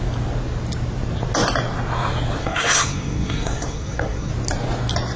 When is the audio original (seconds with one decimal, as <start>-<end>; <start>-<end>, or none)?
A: 0.0-2.4; 4.3-5.2